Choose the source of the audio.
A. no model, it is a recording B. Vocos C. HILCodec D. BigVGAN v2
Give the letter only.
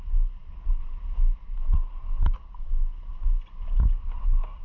A